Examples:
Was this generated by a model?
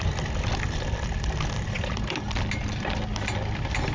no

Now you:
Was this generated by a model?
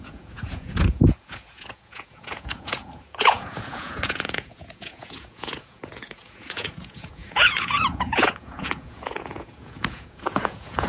yes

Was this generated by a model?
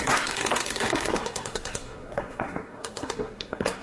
yes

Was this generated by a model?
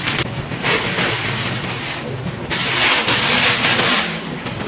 no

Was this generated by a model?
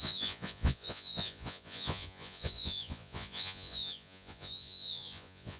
yes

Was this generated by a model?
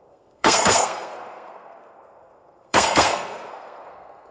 yes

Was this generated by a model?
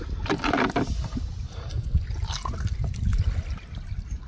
no